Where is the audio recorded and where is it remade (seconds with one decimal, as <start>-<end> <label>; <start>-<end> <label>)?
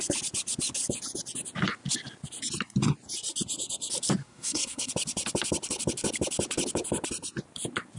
0.0-4.2 recorded; 4.2-4.9 remade; 4.9-8.0 recorded